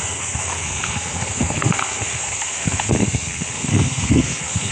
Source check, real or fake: fake